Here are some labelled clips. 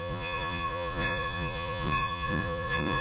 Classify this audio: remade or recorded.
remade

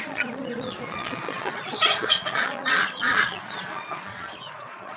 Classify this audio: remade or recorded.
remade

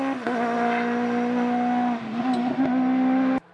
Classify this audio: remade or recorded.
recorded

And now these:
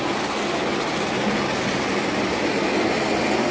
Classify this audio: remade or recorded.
recorded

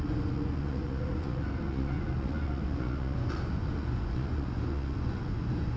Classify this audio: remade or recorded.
remade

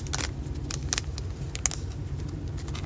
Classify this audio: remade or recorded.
recorded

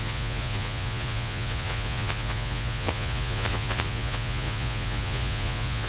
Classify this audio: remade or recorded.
remade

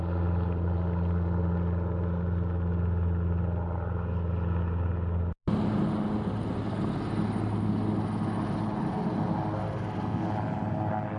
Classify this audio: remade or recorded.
recorded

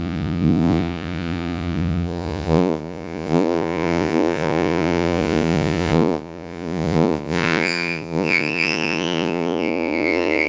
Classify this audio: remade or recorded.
remade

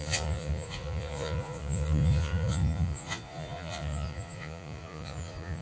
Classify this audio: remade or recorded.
remade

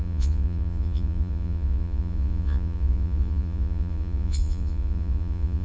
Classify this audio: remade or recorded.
remade